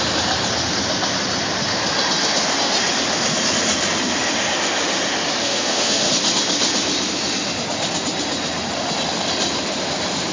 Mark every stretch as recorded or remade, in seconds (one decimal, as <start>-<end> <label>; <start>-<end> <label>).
0.0-5.4 recorded; 5.4-6.1 remade; 6.1-10.3 recorded